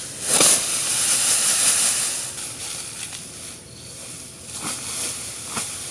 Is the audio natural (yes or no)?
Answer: yes